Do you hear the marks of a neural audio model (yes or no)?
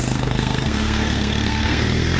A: yes